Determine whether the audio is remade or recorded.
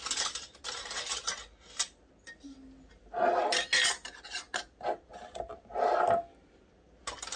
recorded